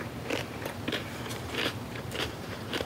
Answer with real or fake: fake